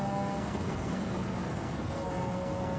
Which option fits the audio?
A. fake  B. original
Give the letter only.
A